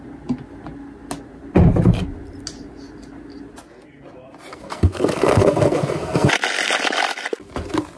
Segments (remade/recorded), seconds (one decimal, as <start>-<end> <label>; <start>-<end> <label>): 0.0-4.5 recorded; 4.5-6.3 remade; 6.3-8.0 recorded